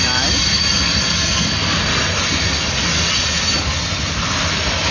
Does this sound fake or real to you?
real